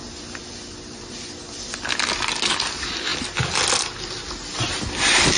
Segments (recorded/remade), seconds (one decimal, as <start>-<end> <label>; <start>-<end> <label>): 0.0-5.4 recorded